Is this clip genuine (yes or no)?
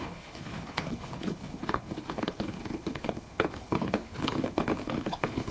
no